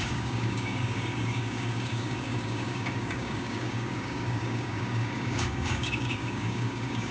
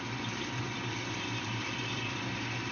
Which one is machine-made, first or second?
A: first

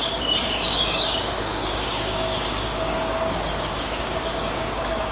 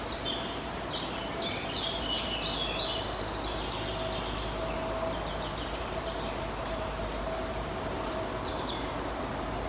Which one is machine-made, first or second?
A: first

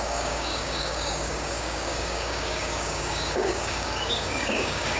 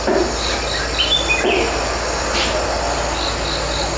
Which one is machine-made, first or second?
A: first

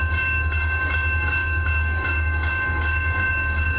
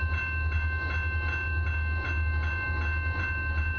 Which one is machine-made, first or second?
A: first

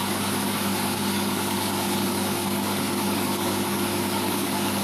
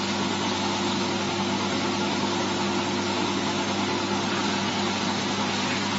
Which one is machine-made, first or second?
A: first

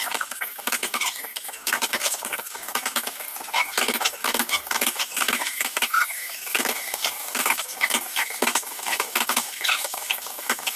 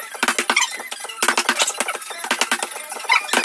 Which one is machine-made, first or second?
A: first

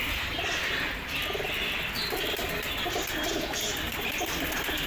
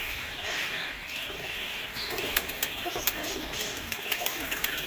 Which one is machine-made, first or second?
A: second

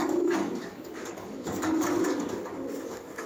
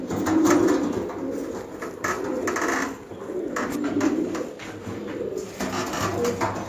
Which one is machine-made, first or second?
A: first